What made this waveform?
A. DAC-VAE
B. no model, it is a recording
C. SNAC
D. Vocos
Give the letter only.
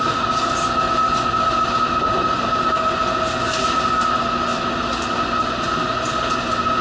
B